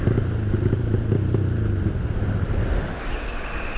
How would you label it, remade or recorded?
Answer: recorded